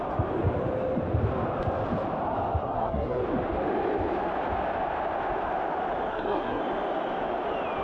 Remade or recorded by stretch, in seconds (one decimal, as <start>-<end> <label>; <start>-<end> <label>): 0.0-2.6 recorded; 2.6-3.2 remade; 3.2-6.1 recorded; 6.1-6.6 remade; 6.6-7.8 recorded